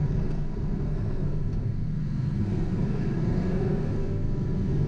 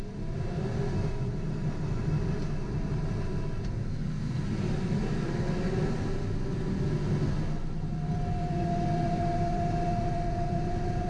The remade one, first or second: first